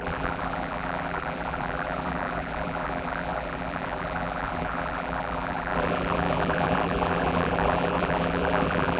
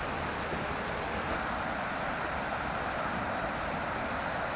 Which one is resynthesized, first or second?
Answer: first